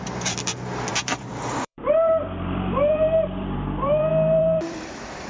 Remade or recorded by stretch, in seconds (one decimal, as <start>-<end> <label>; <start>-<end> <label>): 0.0-5.3 remade